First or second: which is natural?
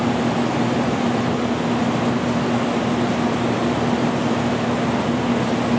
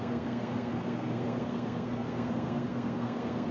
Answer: first